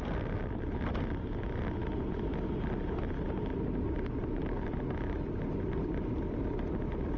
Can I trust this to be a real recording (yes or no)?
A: yes